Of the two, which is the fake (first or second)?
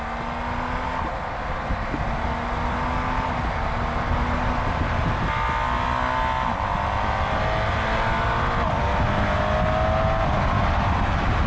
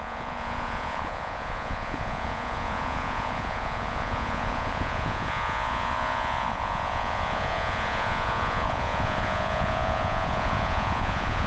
second